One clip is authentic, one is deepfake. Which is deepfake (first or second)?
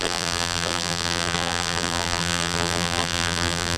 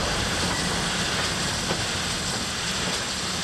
first